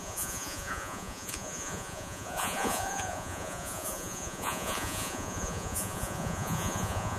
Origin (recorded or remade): remade